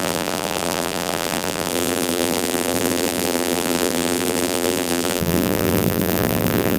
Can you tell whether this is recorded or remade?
remade